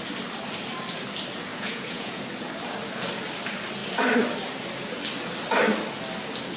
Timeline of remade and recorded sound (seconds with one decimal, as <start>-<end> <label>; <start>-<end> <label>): 0.0-1.5 recorded; 1.5-2.2 remade; 2.2-6.6 recorded